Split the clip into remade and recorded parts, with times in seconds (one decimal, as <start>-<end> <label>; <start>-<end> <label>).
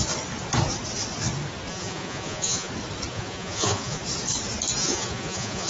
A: 0.0-1.7 recorded; 1.7-2.7 remade; 2.7-3.1 recorded; 3.1-4.0 remade; 4.0-4.8 recorded; 4.8-5.7 remade